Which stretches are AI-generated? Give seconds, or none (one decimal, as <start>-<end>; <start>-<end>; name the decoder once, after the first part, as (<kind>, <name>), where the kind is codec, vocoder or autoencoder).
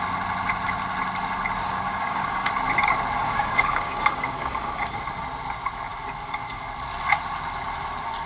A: 1.6-2.5 (codec, DAC); 3.2-5.0